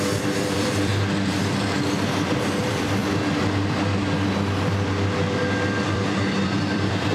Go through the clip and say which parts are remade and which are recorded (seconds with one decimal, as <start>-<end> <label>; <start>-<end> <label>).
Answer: 0.0-0.9 remade; 0.9-2.6 recorded; 2.6-3.0 remade; 3.0-5.8 recorded; 5.8-7.1 remade